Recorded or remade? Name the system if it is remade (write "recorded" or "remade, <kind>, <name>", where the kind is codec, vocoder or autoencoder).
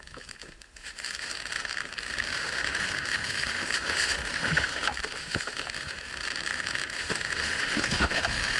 remade, autoencoder, DAC-VAE